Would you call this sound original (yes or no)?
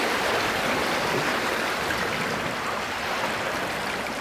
no